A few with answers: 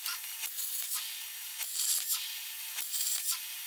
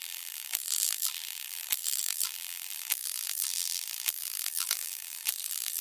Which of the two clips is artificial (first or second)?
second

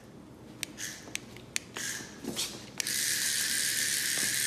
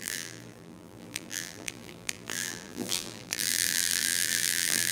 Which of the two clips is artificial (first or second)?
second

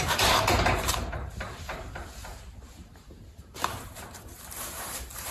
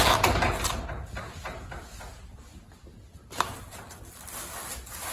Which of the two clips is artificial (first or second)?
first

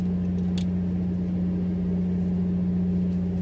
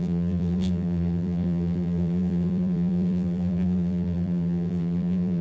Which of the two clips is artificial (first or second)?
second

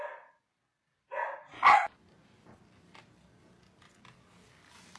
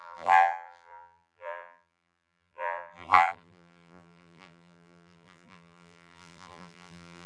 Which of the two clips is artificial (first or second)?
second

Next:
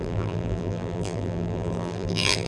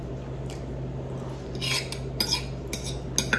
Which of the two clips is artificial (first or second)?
first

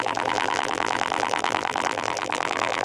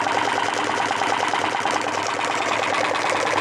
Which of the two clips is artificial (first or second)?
first